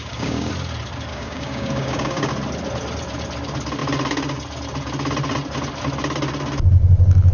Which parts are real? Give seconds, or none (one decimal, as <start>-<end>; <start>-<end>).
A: 0.5-1.1; 2.3-7.3